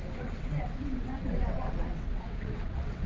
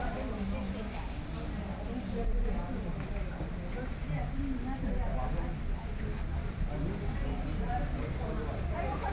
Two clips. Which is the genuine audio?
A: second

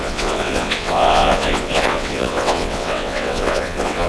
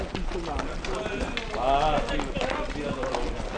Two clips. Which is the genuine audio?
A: second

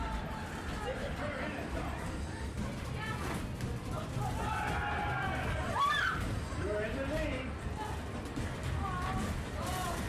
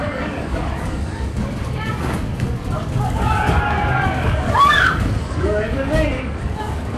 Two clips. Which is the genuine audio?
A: first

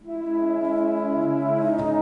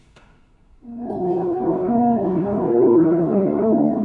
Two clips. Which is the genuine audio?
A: first